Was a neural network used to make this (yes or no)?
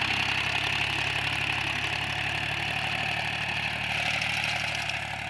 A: no